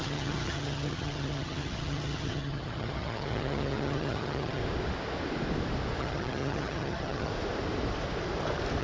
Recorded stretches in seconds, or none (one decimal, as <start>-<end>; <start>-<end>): 4.6-6.0; 7.3-8.8